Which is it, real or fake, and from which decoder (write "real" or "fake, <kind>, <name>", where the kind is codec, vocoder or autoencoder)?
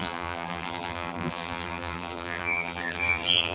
fake, vocoder, BigVGAN v2